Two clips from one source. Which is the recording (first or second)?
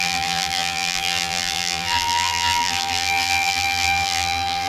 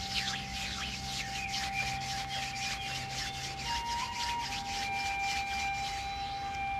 second